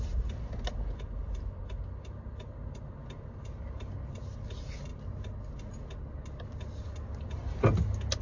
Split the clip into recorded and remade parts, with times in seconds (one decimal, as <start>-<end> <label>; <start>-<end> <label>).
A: 0.0-8.2 recorded